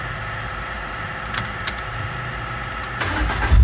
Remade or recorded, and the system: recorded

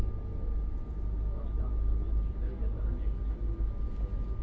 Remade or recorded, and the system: recorded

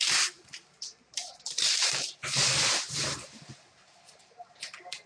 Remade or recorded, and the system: remade, vocoder, BigVGAN v2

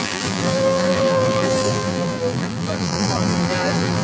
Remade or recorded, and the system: remade, vocoder, BigVGAN v2